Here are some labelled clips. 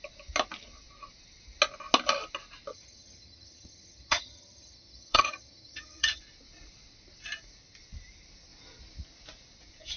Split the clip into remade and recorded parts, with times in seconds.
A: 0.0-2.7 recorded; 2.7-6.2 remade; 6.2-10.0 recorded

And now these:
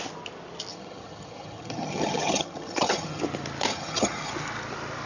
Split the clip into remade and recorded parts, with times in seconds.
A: 0.0-0.7 recorded; 0.7-3.2 remade; 3.2-3.7 recorded; 3.7-4.3 remade; 4.3-5.1 recorded